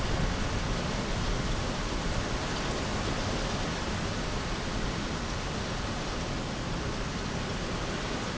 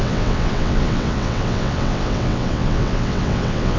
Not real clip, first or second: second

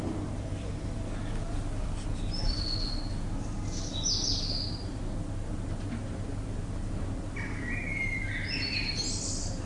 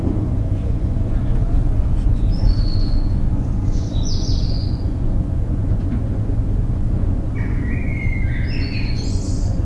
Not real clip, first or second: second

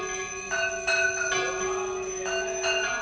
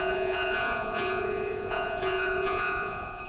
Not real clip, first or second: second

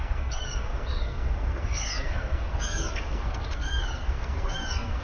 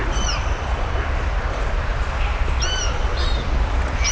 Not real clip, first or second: first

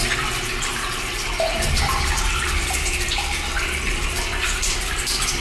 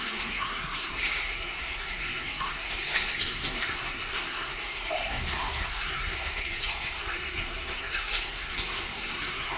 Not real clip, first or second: second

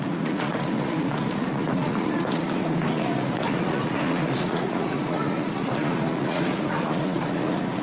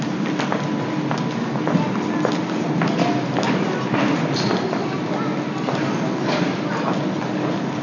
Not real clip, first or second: first